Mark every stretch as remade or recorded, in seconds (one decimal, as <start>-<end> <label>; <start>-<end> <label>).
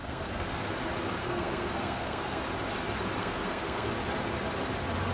0.0-0.7 remade; 0.7-1.2 recorded; 1.2-2.4 remade; 2.4-3.2 recorded; 3.2-3.9 remade; 3.9-5.1 recorded